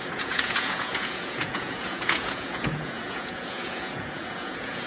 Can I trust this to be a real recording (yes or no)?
no